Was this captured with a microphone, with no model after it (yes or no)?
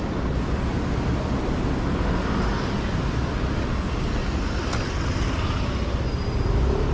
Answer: yes